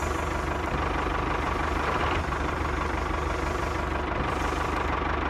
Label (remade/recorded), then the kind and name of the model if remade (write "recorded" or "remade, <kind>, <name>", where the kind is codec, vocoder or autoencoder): remade, vocoder, BigVGAN v2